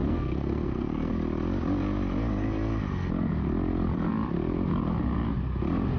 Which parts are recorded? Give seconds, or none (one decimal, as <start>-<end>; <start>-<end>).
1.1-6.0